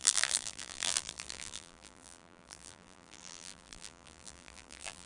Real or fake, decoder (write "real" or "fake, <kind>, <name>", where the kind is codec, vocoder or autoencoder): fake, vocoder, BigVGAN v2